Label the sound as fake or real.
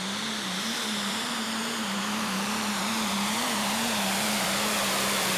fake